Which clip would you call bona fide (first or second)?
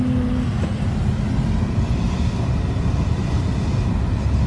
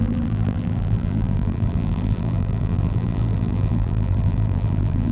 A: first